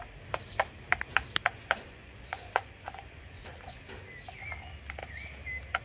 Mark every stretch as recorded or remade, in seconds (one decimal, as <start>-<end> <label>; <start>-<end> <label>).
0.0-1.4 recorded; 1.4-3.8 remade; 3.8-5.8 recorded